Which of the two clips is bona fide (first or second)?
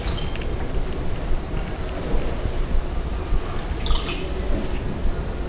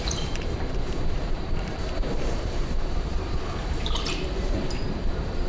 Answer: first